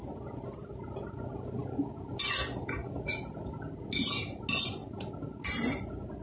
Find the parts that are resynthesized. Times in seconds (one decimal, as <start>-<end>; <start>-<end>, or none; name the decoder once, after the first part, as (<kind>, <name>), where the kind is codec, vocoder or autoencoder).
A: none